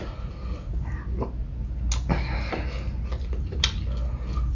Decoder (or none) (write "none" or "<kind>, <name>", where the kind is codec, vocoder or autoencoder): none